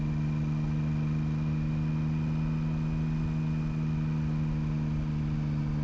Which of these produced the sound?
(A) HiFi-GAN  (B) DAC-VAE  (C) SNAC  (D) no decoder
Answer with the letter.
D